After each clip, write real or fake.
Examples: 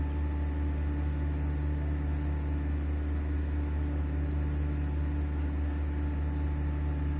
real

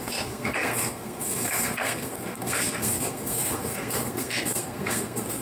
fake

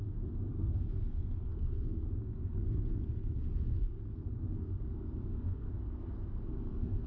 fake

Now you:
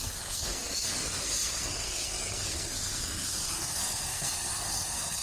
fake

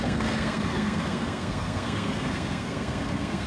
fake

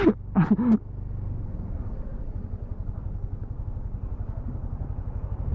real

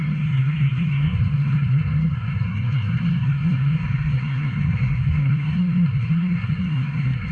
fake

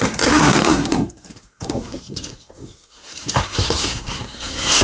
fake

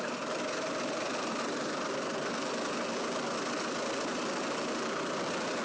real